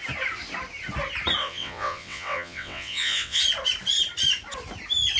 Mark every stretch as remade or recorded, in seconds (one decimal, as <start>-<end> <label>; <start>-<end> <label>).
0.0-1.4 recorded; 1.4-3.4 remade; 3.4-5.2 recorded